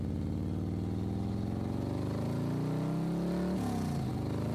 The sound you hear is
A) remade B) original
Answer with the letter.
B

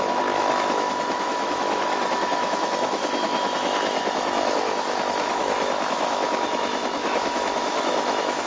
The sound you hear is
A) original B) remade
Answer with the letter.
B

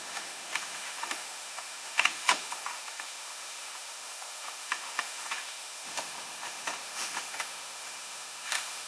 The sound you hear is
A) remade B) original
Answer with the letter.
A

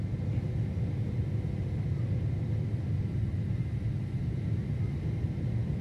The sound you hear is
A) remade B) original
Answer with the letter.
B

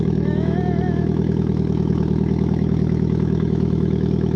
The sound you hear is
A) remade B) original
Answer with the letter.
A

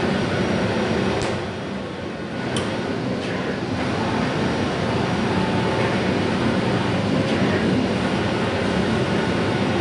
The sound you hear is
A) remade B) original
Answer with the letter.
B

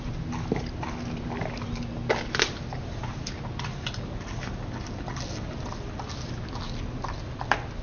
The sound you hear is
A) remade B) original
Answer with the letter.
B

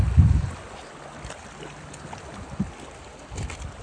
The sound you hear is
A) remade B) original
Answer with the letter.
B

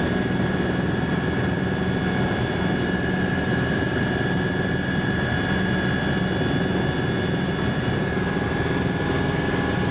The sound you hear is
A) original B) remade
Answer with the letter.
A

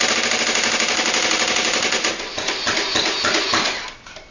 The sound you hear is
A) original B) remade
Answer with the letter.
A